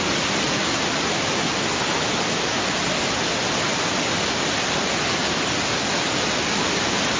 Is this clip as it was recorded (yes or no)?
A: yes